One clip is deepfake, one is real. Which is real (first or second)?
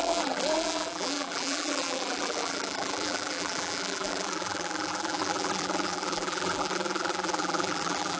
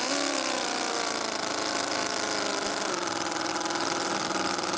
second